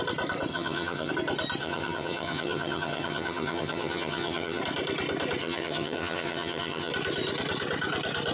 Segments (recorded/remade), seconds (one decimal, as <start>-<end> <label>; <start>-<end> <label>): 0.0-0.5 recorded; 0.5-1.1 remade; 1.1-1.6 recorded; 1.6-4.6 remade; 4.6-5.4 recorded; 5.4-6.9 remade; 6.9-8.3 recorded